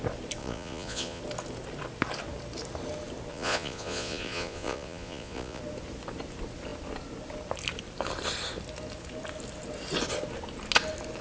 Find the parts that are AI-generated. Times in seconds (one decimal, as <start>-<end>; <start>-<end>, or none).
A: 0.4-1.2; 3.3-5.6